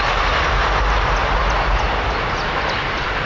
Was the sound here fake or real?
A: real